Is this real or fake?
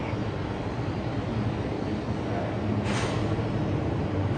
real